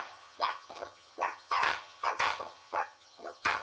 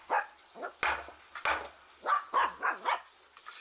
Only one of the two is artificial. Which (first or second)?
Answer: first